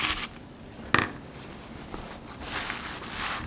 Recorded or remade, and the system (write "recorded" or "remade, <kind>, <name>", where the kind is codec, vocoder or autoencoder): recorded